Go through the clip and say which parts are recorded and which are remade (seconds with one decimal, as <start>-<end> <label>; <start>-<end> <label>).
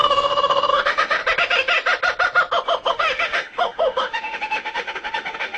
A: 0.0-1.2 remade; 1.2-2.9 recorded; 2.9-5.6 remade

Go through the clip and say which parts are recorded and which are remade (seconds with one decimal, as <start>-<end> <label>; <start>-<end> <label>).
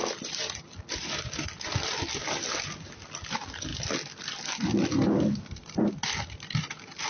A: 0.0-3.7 recorded; 3.7-5.9 remade; 5.9-7.1 recorded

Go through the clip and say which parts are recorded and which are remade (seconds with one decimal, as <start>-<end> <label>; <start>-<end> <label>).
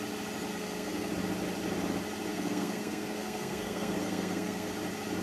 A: 0.0-0.5 recorded; 0.5-1.1 remade; 1.1-2.3 recorded; 2.3-4.7 remade; 4.7-5.2 recorded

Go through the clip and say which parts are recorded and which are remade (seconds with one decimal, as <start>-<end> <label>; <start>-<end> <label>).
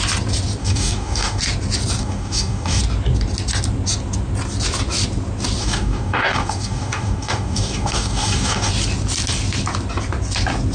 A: 0.0-0.6 recorded; 0.6-1.4 remade; 1.4-2.0 recorded; 2.0-2.8 remade; 2.8-5.6 recorded; 5.6-8.7 remade; 8.7-10.7 recorded